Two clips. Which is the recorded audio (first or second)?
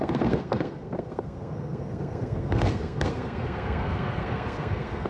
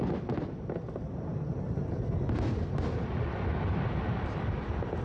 second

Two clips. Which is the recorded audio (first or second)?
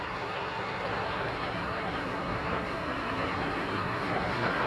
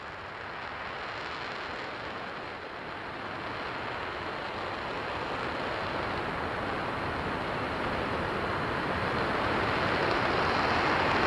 second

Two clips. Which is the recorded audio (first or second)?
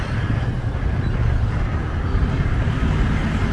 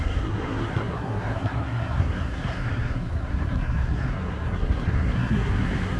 first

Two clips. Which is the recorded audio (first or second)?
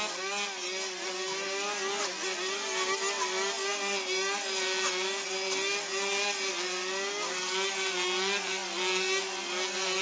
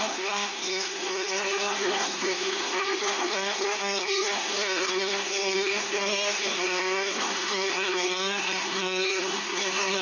first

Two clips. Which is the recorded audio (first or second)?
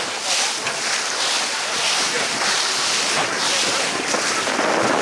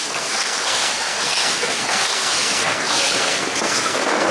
first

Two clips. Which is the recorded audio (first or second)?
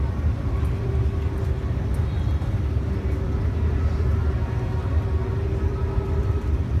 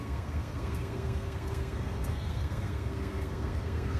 first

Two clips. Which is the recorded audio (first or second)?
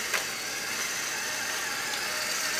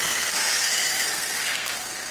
first